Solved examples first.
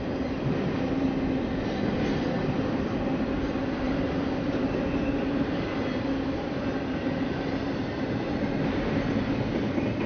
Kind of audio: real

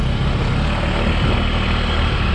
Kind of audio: real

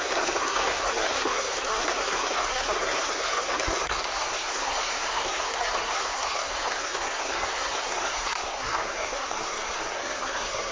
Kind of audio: fake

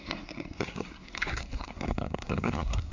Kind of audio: fake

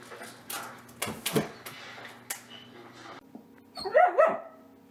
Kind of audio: real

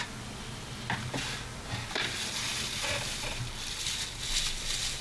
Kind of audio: real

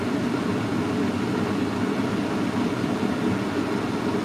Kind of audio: real